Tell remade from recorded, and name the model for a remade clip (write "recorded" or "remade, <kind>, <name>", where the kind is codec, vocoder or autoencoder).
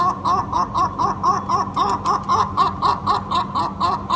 recorded